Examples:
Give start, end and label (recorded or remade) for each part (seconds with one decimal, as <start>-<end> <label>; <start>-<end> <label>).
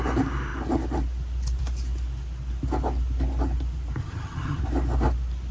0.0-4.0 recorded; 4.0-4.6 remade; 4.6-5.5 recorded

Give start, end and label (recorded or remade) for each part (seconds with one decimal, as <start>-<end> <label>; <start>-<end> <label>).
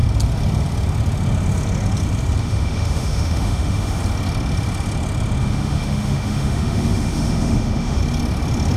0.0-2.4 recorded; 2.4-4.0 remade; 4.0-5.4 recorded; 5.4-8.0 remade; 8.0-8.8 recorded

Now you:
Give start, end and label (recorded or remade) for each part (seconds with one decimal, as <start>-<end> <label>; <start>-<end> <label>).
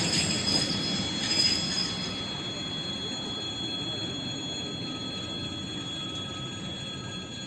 0.0-7.5 recorded